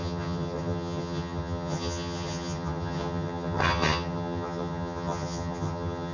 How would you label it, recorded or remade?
remade